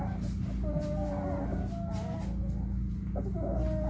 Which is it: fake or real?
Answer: real